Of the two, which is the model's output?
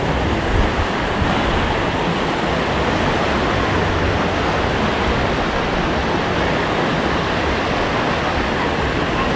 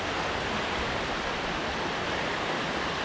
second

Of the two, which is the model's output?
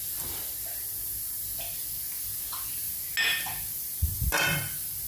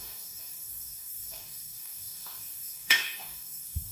second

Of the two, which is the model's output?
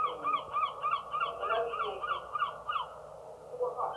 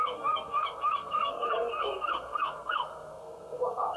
second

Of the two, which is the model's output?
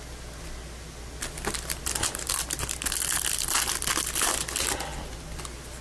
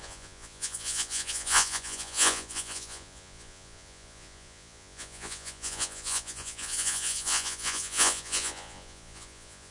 second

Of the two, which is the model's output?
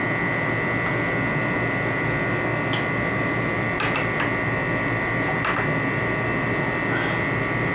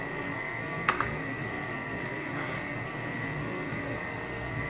second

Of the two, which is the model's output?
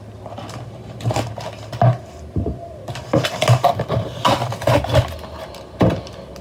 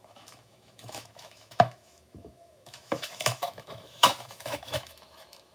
second